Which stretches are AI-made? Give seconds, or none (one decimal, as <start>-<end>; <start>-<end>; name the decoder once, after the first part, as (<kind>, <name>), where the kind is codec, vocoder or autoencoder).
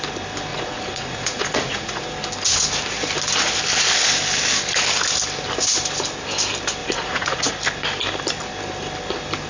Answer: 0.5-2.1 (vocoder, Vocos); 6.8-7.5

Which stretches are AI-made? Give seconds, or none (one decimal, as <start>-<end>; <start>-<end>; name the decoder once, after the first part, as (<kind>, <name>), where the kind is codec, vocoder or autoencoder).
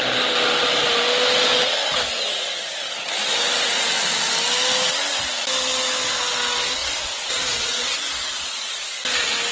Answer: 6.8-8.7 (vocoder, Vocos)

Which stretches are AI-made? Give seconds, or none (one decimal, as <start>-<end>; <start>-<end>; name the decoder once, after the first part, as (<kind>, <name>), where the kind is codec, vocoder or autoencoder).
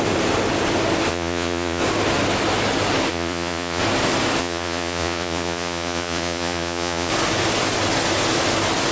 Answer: 1.1-1.8 (vocoder, Vocos); 3.1-3.8; 4.4-7.1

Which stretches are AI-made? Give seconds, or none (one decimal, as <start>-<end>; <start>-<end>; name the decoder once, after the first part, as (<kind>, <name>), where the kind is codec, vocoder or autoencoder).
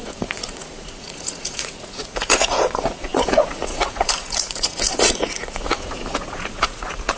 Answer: 0.0-7.2 (vocoder, Vocos)